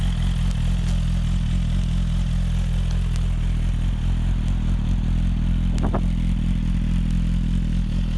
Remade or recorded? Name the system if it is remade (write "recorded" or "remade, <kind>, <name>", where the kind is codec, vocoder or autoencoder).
recorded